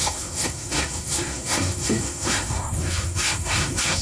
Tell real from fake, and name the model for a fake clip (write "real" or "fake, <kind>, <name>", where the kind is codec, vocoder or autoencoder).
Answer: fake, codec, SNAC